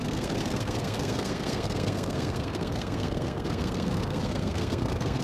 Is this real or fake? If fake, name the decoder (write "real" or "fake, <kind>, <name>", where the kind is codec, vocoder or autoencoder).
fake, codec, SNAC